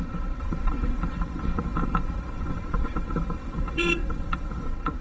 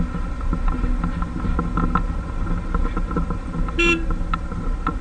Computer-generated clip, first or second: first